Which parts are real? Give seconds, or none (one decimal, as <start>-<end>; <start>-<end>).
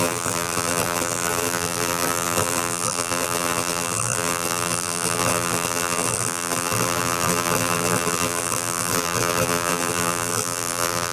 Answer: none